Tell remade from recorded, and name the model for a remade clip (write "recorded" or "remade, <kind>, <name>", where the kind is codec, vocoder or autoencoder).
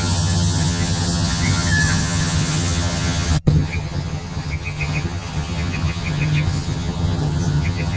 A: remade, vocoder, HiFi-GAN